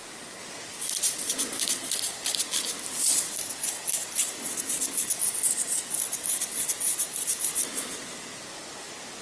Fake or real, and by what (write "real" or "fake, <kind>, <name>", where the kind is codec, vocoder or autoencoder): real